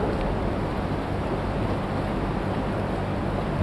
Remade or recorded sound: recorded